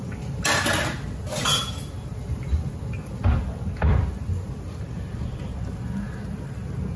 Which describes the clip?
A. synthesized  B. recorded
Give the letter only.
B